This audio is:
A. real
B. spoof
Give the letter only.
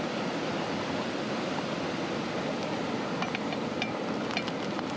A